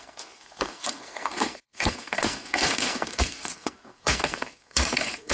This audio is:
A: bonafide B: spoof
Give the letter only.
B